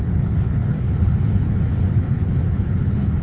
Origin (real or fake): fake